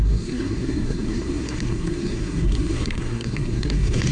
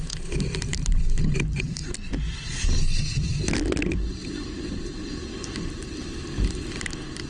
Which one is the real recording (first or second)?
second